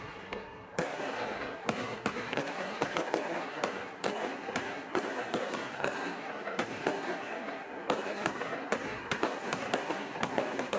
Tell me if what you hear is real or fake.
fake